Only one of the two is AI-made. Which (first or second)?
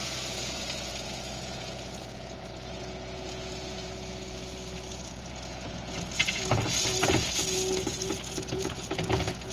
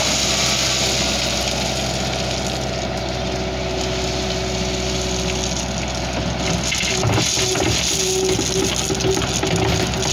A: first